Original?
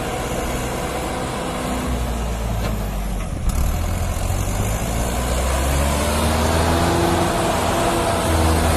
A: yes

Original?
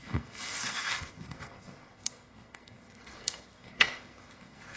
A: no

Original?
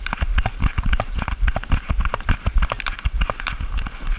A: yes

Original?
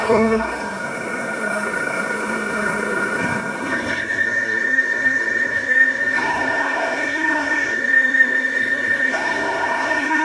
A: no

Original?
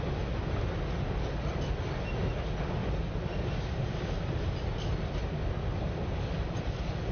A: yes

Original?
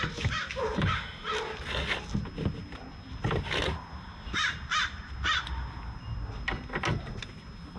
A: yes